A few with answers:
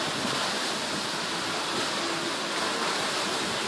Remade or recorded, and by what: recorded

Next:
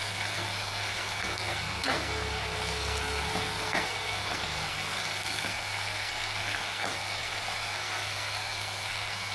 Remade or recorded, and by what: remade, codec, SNAC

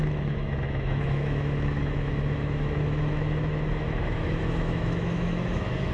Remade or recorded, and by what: remade, autoencoder, DAC-VAE